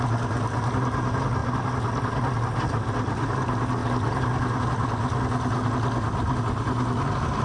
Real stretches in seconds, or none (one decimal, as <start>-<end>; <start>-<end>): 0.0-7.4